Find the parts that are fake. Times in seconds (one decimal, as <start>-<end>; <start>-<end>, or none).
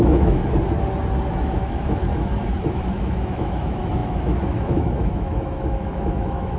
0.0-0.4; 1.3-2.1; 2.7-6.6